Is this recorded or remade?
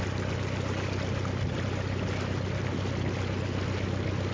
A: recorded